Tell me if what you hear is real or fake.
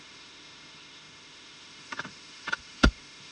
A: fake